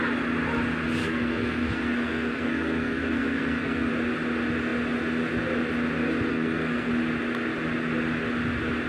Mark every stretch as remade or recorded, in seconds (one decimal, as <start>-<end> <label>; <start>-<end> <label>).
0.0-1.0 recorded; 1.0-3.9 remade; 3.9-6.3 recorded; 6.3-6.9 remade; 6.9-8.9 recorded